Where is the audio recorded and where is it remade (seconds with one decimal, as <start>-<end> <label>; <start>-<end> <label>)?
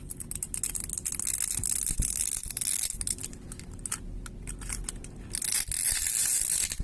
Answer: 0.0-6.8 recorded